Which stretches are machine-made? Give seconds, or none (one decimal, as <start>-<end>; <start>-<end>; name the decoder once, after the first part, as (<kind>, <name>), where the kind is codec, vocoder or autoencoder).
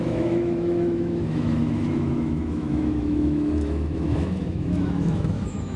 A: 0.0-5.8 (autoencoder, DAC-VAE)